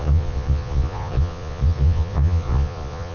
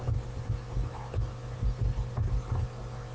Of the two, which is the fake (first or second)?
first